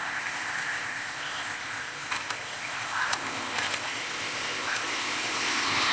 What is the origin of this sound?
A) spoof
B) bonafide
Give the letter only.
A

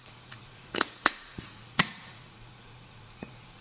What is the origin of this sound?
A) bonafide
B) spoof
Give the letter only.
B